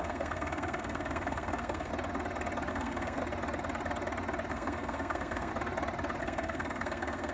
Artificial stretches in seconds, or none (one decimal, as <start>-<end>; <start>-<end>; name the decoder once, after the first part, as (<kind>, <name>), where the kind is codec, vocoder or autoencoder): 0.0-1.9 (codec, SNAC); 2.7-3.2; 4.5-5.5; 6.2-7.3